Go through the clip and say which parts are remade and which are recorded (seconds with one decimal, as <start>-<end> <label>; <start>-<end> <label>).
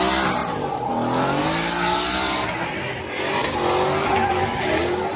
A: 0.0-5.2 recorded